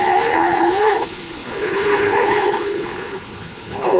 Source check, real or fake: fake